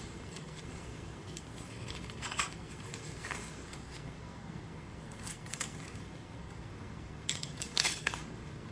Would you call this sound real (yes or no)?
no